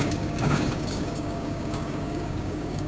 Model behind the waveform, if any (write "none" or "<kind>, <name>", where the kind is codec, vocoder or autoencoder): codec, DAC